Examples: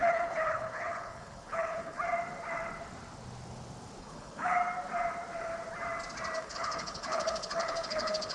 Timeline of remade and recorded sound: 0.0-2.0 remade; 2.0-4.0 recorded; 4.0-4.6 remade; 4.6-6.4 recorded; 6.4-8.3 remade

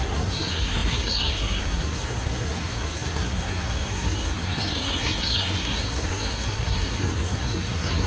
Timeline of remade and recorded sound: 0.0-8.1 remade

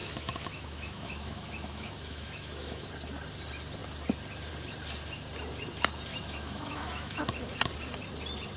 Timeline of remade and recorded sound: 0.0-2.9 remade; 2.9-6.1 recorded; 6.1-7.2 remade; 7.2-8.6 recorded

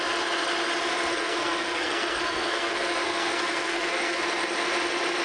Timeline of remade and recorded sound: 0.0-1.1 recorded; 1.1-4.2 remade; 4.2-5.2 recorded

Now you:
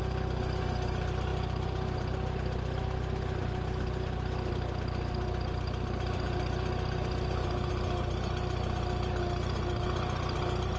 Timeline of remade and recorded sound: 0.0-10.8 recorded

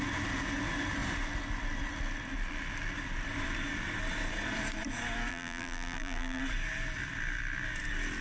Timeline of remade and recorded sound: 0.0-5.3 recorded; 5.3-6.4 remade; 6.4-8.2 recorded